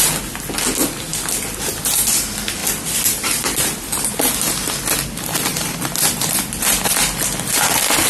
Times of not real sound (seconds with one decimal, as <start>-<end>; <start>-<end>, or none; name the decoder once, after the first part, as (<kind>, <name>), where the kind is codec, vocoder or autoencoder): 2.6-4.1 (vocoder, BigVGAN v2); 5.5-6.6